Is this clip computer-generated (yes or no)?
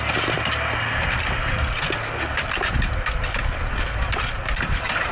no